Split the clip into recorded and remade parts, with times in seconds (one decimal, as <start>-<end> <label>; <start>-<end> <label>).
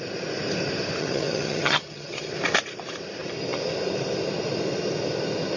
0.0-1.0 recorded; 1.0-2.3 remade; 2.3-5.6 recorded